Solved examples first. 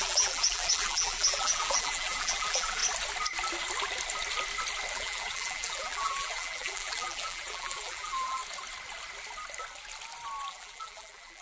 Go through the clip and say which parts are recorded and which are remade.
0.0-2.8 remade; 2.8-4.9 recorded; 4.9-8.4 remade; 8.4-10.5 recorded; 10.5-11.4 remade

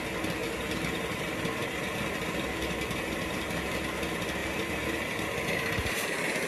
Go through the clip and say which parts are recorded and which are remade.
0.0-0.4 recorded; 0.4-3.4 remade; 3.4-4.4 recorded; 4.4-6.5 remade